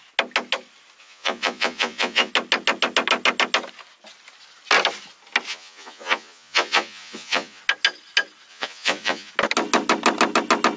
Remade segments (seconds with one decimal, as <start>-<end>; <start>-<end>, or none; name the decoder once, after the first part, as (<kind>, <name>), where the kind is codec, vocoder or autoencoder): 1.0-2.3 (vocoder, Vocos); 5.5-7.6; 8.5-9.3